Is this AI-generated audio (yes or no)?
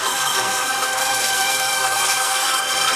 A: yes